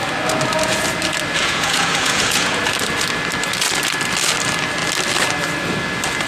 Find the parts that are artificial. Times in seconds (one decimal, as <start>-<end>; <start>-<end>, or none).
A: 1.4-2.6